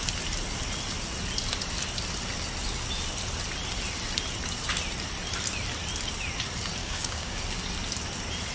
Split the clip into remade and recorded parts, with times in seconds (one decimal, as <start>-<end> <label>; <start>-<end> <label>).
0.0-6.8 recorded; 6.8-7.4 remade; 7.4-8.5 recorded